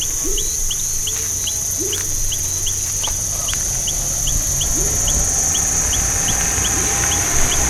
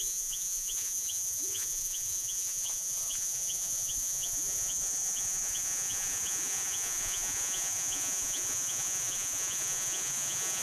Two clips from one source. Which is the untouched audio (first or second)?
first